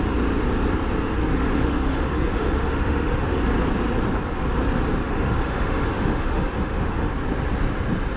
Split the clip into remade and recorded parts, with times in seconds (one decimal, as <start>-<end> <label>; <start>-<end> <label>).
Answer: 0.0-1.2 recorded; 1.2-3.4 remade; 3.4-5.0 recorded; 5.0-7.1 remade; 7.1-8.2 recorded